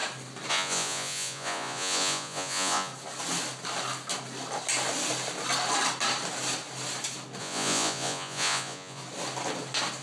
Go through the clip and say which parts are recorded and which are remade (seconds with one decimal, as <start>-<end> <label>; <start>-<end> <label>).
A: 0.0-0.5 recorded; 0.5-2.9 remade; 2.9-7.4 recorded; 7.4-9.0 remade; 9.0-10.0 recorded